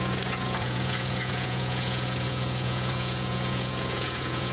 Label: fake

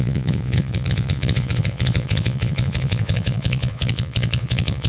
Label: fake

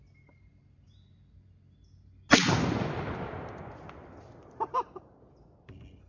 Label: real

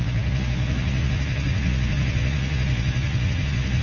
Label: fake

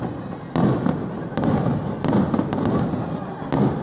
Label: real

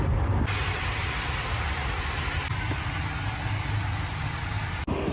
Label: real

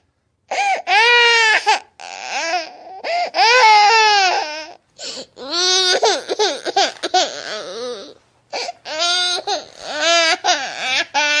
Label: real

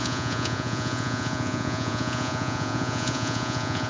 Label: fake